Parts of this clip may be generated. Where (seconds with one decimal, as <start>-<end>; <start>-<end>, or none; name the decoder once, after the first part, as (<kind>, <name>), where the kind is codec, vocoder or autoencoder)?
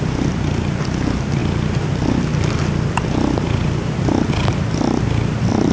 none